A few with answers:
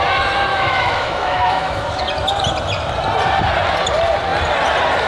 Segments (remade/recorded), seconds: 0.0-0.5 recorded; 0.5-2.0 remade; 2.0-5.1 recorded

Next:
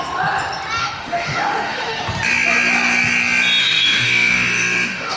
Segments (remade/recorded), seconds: 0.0-0.8 recorded; 0.8-2.0 remade; 2.0-3.6 recorded; 3.6-5.2 remade